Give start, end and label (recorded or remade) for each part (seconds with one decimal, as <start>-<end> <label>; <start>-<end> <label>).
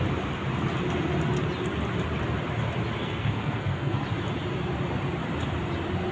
0.0-3.0 recorded; 3.0-4.0 remade; 4.0-6.1 recorded